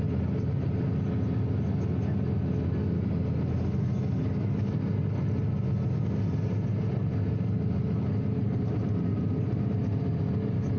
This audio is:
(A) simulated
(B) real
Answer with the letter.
B